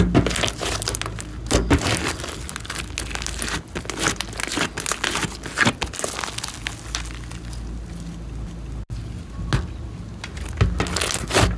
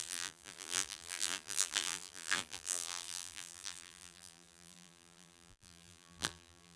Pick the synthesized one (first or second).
second